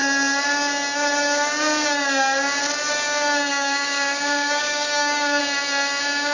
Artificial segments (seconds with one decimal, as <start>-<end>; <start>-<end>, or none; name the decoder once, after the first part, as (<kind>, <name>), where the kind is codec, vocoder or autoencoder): 3.5-5.4 (codec, DAC)